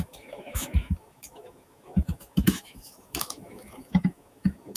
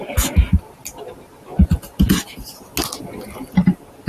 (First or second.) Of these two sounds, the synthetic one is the first